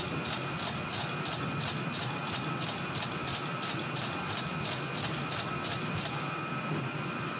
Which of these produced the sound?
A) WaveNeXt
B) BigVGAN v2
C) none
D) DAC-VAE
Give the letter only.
C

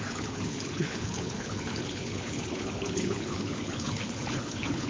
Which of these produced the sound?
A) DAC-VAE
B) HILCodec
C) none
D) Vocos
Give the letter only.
B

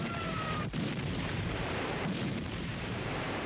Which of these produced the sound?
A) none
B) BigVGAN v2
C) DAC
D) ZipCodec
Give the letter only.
B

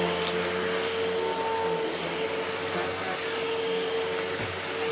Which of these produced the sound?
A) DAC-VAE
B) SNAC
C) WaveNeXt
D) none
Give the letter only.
D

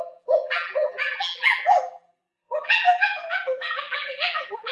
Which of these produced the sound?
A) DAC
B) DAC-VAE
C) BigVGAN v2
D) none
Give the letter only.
C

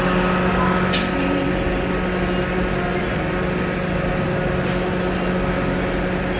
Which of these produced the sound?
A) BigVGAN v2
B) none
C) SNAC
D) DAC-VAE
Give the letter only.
B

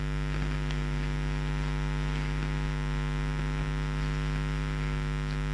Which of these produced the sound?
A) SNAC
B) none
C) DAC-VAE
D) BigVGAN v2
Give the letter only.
B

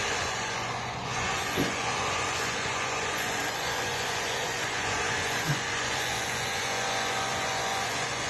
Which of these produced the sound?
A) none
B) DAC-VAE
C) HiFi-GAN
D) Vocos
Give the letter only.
D